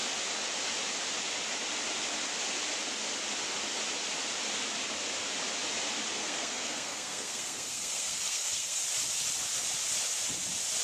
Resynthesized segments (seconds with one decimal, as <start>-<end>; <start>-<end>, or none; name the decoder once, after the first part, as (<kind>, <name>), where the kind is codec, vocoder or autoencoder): 6.2-8.8 (codec, SNAC)